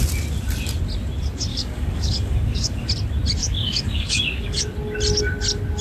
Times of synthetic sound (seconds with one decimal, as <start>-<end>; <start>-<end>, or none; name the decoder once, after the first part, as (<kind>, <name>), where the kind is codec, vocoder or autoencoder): 1.5-2.9 (codec, DAC); 3.4-4.6